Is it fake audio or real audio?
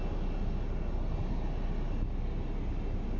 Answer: real